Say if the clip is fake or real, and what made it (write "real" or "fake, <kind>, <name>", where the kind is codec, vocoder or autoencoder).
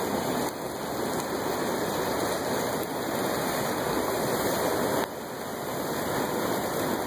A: real